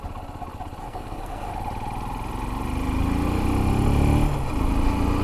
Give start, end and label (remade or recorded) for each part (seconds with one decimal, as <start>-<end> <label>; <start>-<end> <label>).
0.0-0.8 recorded; 0.8-1.5 remade; 1.5-5.2 recorded